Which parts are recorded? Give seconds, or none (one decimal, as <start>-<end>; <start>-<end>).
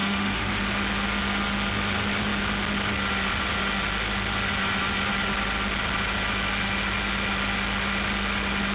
0.6-8.7